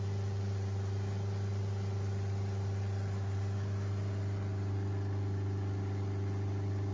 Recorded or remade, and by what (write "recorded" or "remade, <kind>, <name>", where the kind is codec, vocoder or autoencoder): recorded